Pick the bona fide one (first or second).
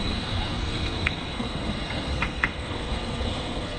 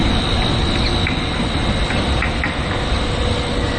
second